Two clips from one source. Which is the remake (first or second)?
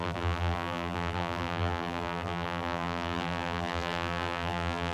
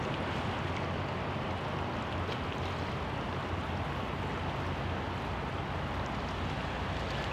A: first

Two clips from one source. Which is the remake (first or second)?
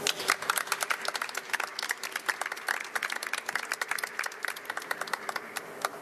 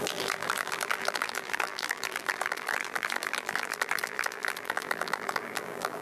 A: second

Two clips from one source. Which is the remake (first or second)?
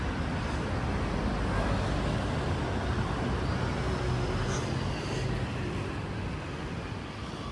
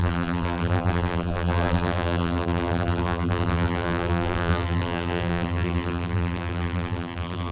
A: second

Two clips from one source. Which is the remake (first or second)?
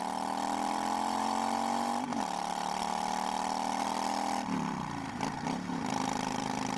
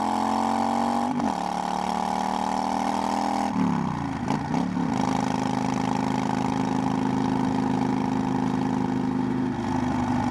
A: first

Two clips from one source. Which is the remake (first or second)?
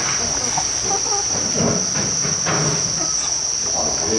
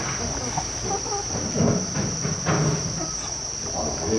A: second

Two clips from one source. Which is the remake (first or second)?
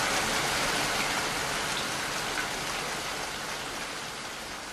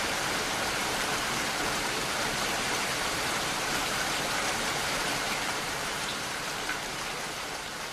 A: second